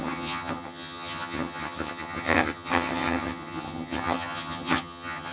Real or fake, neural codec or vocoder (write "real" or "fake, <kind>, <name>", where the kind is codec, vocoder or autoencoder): fake, vocoder, HiFi-GAN